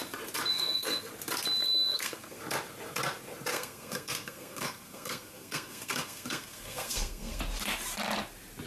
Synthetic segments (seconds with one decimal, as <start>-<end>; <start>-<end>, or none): 0.5-1.1; 1.6-2.4; 3.5-7.4